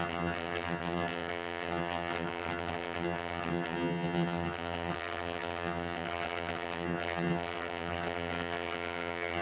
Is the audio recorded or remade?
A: remade